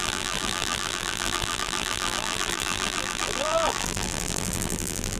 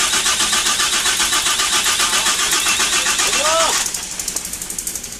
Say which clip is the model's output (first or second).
first